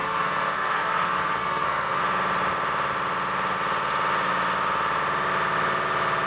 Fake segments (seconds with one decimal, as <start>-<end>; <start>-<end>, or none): 0.0-2.0